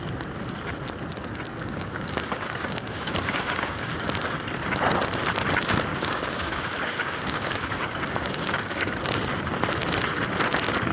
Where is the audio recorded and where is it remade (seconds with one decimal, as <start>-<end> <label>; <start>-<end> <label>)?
0.0-1.6 recorded; 1.6-3.9 remade; 3.9-5.9 recorded; 5.9-8.9 remade; 8.9-10.9 recorded